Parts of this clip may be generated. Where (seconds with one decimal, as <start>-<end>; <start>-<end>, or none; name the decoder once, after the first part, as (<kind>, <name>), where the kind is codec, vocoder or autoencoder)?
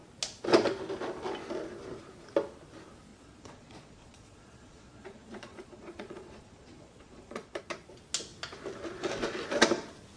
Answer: 3.1-7.6 (vocoder, Vocos)